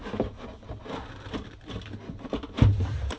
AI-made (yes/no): no